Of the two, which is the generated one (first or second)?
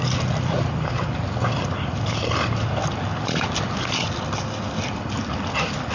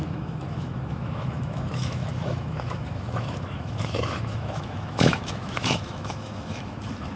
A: second